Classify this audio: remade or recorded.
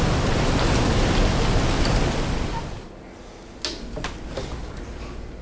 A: recorded